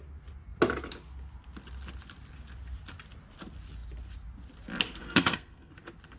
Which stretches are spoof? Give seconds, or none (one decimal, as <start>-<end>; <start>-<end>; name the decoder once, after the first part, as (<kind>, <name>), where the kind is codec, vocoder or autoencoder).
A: 5.0-5.7 (codec, SNAC)